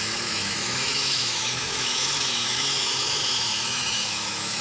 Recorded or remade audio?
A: remade